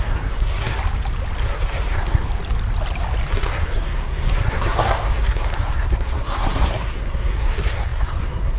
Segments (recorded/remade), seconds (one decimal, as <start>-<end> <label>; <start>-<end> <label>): 0.0-0.8 remade; 0.8-1.4 recorded; 1.4-2.3 remade; 2.3-3.3 recorded; 3.3-8.6 remade